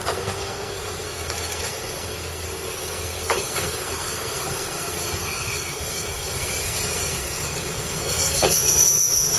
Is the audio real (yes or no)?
no